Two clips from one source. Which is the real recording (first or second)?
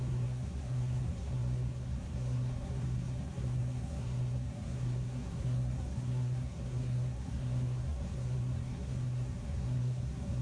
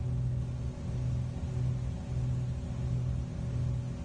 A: second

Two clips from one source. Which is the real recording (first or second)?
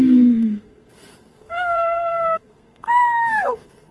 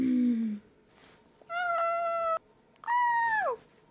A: second